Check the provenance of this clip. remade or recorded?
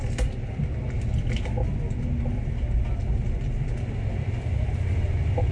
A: recorded